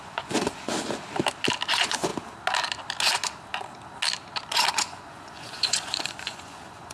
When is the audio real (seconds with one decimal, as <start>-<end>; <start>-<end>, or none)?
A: 0.7-1.7; 2.1-4.7